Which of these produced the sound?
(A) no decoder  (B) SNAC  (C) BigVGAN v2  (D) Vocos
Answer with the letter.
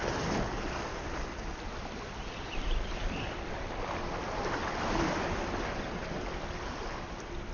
A